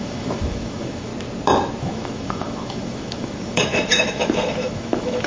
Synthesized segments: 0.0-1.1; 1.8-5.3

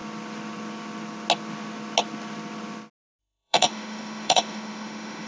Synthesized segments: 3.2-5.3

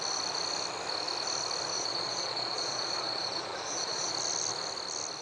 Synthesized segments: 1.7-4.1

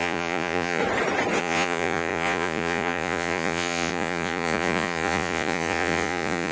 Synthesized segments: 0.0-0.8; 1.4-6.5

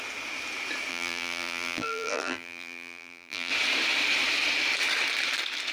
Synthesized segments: 0.9-3.5

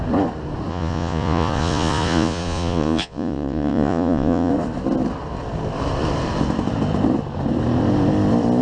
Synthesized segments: 0.7-4.5